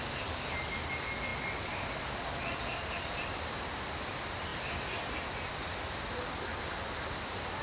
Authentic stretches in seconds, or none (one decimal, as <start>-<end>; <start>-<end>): 0.0-7.6